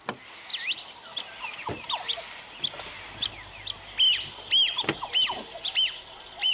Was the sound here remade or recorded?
recorded